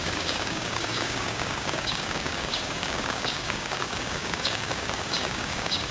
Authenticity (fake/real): fake